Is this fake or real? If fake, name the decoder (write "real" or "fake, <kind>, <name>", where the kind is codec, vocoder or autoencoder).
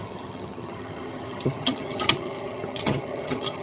fake, vocoder, HiFi-GAN